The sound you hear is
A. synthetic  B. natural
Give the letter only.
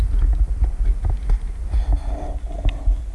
B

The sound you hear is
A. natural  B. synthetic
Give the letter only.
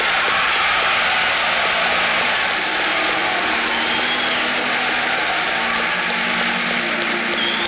A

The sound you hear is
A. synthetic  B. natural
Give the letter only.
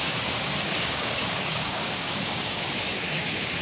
A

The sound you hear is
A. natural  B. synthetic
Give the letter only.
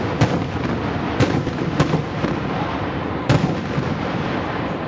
A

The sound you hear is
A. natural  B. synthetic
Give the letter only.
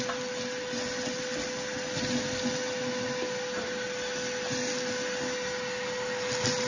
A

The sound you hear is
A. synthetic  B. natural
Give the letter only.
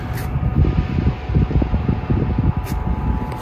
B